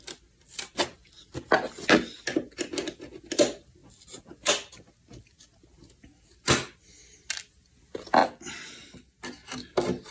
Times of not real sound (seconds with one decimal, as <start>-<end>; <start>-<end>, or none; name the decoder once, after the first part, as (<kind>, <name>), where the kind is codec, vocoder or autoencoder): none